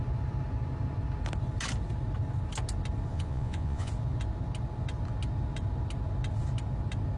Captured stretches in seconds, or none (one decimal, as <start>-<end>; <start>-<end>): 0.0-3.1; 3.9-7.2